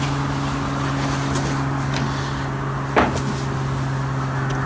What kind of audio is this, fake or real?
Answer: real